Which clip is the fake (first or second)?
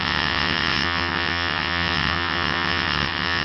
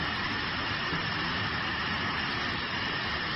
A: first